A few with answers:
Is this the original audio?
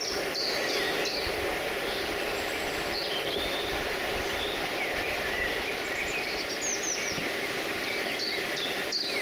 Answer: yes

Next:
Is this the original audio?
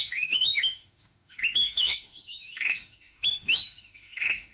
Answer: no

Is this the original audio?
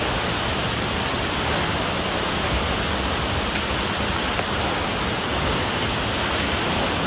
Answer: yes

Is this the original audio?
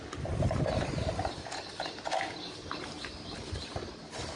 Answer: no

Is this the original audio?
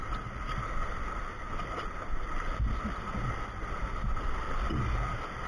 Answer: yes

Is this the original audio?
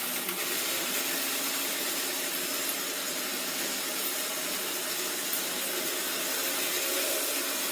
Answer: yes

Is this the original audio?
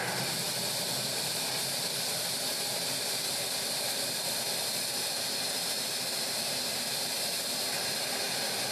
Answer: yes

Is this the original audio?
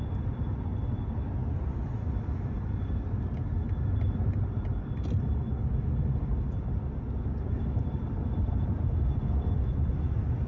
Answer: yes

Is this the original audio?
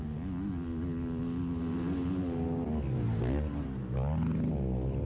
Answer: yes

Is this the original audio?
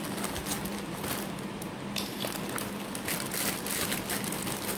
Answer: yes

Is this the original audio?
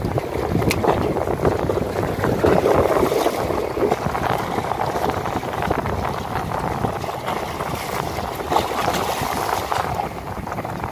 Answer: yes